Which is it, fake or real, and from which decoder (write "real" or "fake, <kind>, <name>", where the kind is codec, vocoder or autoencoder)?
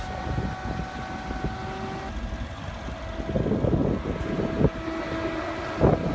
real